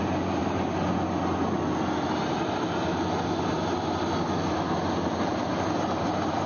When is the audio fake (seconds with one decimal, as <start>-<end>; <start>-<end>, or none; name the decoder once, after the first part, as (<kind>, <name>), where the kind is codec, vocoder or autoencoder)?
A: none